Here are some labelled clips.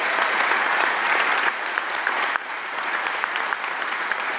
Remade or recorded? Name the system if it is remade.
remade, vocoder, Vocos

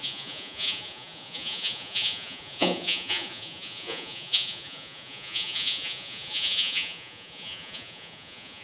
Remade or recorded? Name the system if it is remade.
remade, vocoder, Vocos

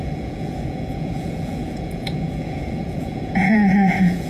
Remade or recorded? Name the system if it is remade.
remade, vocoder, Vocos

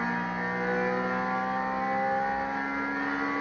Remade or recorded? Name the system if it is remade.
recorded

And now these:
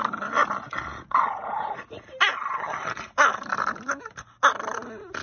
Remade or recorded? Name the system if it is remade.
recorded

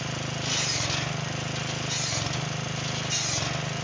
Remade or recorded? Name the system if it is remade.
recorded